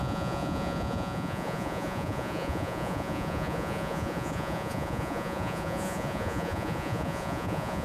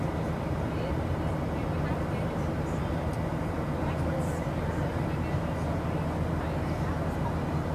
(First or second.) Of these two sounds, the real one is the second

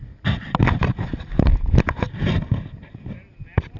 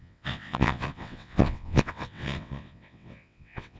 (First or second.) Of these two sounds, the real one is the first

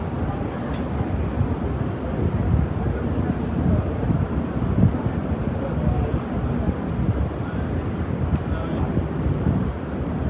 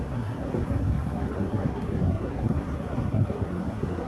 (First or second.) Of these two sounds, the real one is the first